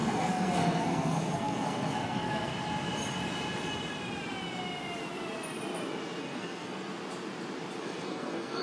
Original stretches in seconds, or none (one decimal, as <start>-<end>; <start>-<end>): 2.5-6.2; 6.9-7.8